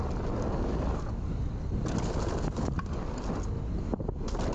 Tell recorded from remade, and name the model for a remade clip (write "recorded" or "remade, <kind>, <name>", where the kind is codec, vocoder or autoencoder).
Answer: recorded